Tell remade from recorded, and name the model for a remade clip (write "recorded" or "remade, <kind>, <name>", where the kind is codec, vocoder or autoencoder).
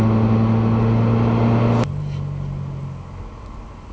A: recorded